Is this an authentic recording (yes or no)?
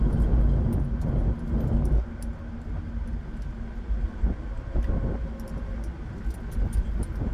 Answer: yes